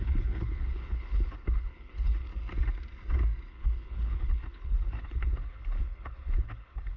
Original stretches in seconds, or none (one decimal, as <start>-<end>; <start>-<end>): 2.3-3.5